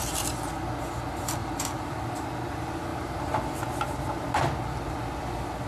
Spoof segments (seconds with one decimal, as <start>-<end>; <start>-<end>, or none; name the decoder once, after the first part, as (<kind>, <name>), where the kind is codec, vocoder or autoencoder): 1.4-2.1 (vocoder, BigVGAN v2); 2.9-4.3